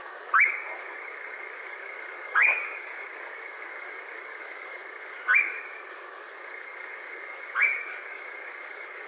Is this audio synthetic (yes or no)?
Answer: yes